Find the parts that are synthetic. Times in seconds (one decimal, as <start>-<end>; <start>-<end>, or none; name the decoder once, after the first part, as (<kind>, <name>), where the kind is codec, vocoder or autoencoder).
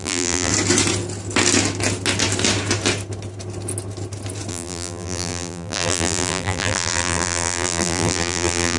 0.0-0.5 (vocoder, BigVGAN v2); 4.5-8.8